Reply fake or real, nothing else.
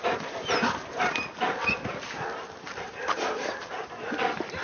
real